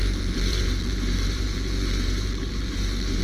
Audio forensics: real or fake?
fake